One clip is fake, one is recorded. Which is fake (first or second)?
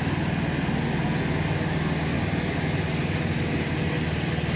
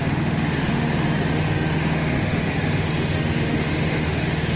second